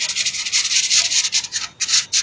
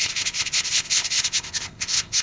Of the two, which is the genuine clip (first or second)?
first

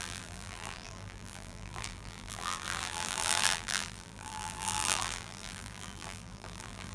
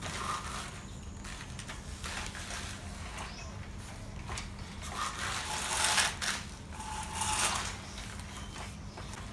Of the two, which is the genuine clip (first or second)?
second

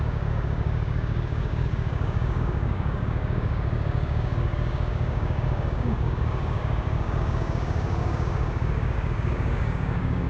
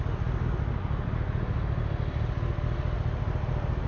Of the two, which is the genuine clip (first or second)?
second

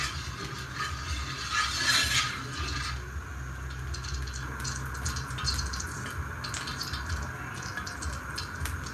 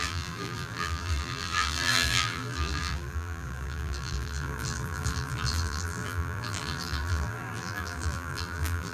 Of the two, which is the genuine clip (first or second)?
first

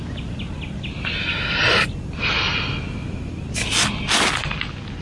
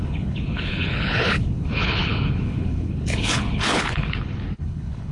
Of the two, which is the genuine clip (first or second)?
first